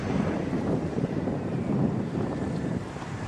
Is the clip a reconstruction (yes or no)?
yes